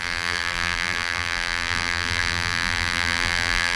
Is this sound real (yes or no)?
no